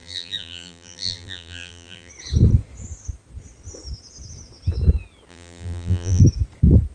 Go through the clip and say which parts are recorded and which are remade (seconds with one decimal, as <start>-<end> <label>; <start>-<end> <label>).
0.0-2.1 remade; 2.1-5.3 recorded; 5.3-6.2 remade; 6.2-6.9 recorded